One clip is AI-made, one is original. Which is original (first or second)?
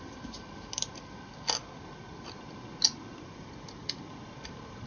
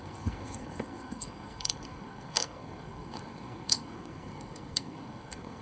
first